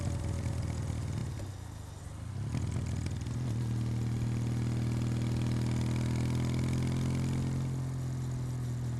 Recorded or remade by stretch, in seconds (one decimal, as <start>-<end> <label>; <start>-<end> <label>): 0.0-9.0 recorded